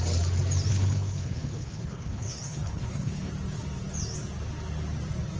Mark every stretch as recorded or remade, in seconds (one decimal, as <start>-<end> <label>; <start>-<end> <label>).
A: 0.0-0.7 recorded; 0.7-3.3 remade; 3.3-5.4 recorded